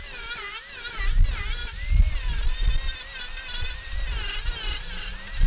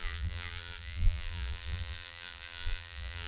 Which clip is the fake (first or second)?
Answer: second